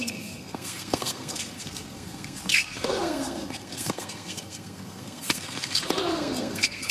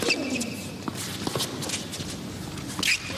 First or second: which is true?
second